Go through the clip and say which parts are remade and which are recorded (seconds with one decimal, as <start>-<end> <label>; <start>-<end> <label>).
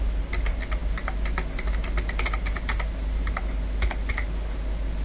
0.0-5.0 recorded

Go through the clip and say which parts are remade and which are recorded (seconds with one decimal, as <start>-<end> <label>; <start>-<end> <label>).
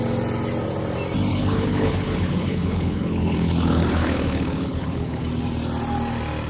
0.0-1.3 recorded; 1.3-5.2 remade; 5.2-6.5 recorded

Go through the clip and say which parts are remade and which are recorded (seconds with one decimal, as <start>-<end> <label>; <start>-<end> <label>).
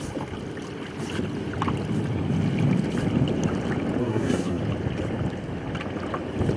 0.0-4.0 recorded; 4.0-4.6 remade; 4.6-6.6 recorded